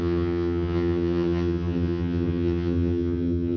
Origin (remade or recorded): remade